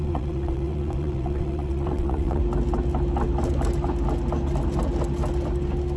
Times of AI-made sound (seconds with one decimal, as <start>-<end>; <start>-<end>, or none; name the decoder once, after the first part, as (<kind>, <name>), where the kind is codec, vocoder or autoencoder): 0.0-2.4 (vocoder, WaveNeXt)

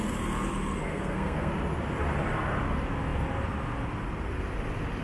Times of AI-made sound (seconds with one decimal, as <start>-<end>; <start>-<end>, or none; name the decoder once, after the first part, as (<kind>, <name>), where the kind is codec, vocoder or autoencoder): 0.9-1.5 (codec, SNAC)

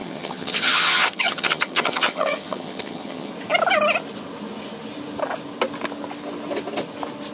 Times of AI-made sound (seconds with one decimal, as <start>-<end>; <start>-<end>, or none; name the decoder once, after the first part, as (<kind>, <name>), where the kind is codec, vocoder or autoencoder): 0.0-3.3 (vocoder, HiFi-GAN)

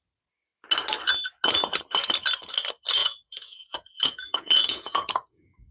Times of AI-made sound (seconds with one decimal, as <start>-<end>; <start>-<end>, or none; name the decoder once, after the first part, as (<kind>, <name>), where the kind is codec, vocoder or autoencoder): 3.0-5.7 (vocoder, Vocos)